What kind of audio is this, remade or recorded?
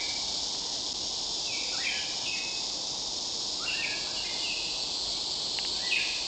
recorded